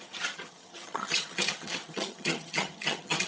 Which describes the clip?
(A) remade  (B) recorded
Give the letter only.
A